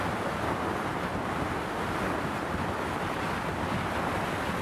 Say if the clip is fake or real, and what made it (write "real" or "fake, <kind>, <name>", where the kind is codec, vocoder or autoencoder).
real